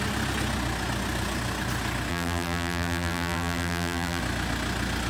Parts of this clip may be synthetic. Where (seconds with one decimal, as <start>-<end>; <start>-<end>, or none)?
2.1-4.2